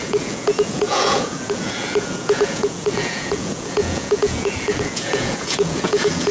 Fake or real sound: fake